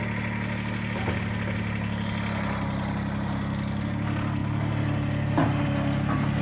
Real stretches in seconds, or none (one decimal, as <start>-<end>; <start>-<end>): 0.0-6.4